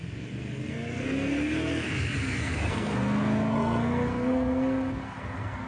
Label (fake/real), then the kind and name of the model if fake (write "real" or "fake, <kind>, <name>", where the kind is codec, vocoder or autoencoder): fake, codec, SNAC